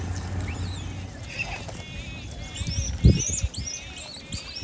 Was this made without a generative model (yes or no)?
yes